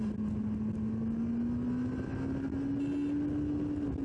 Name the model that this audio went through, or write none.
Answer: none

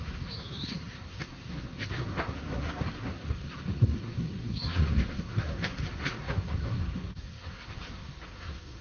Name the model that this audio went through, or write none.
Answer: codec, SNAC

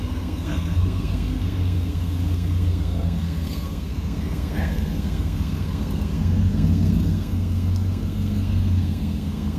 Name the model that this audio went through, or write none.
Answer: codec, SNAC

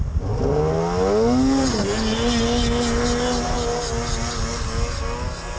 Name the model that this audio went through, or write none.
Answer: none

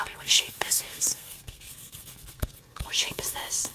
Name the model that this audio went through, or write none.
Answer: codec, SNAC